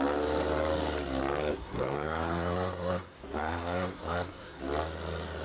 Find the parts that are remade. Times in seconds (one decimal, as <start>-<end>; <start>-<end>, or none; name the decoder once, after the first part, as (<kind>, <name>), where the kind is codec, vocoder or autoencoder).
1.4-4.6 (codec, SNAC)